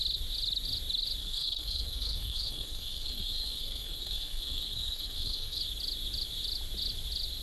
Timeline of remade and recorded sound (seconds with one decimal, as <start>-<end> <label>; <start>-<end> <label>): 0.0-1.2 recorded; 1.2-5.6 remade; 5.6-7.4 recorded